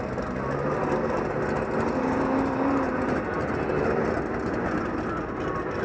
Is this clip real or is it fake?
real